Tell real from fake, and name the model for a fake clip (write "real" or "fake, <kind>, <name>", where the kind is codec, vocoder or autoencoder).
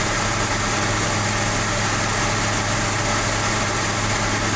real